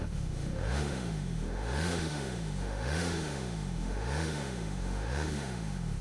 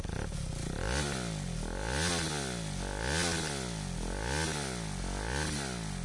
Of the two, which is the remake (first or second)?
first